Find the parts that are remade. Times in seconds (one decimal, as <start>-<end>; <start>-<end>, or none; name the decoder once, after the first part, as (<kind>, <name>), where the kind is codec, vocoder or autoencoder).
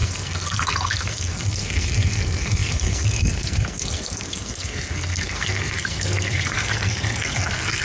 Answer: 0.0-7.8 (codec, SNAC)